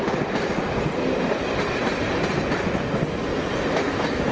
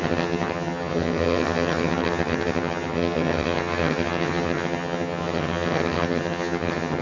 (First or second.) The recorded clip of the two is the first